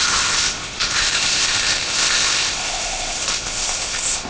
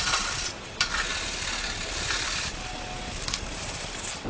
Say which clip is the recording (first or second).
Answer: second